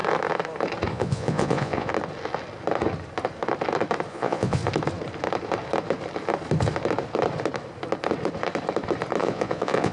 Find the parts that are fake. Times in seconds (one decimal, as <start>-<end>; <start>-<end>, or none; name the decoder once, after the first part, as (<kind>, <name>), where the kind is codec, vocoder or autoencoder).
0.9-1.9 (vocoder, Vocos); 4.1-4.6; 9.2-9.9